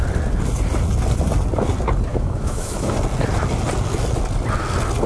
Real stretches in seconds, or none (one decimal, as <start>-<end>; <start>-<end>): 0.0-2.1; 2.9-5.1

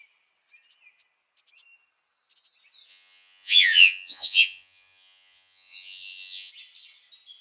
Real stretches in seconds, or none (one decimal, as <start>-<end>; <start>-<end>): 0.0-2.9; 6.5-7.4

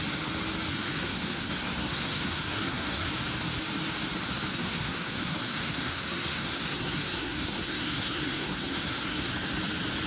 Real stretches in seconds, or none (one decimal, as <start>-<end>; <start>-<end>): 0.0-0.7; 3.1-4.5; 9.3-10.1

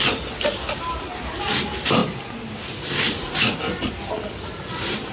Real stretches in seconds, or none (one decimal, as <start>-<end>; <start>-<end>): 0.0-3.1; 3.6-5.1